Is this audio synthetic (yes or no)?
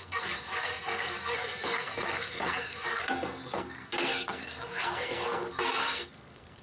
yes